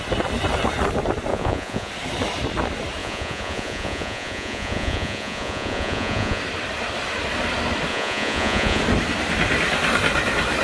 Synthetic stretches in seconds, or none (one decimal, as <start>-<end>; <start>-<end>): 1.3-1.9; 3.0-6.4; 7.9-8.8